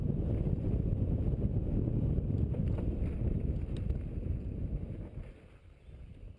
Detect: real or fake real